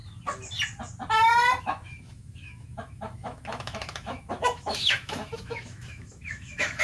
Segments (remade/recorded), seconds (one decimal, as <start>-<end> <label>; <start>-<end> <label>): 0.0-1.6 recorded; 1.6-6.8 remade